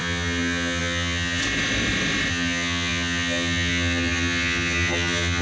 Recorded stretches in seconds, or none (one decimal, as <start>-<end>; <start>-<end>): 1.4-2.3